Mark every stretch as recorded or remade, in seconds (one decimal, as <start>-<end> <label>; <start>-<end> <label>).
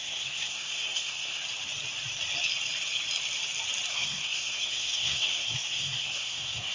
0.0-1.4 remade; 1.4-3.9 recorded; 3.9-6.7 remade